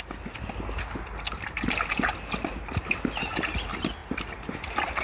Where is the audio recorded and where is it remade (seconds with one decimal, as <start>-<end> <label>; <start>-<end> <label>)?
0.0-5.0 recorded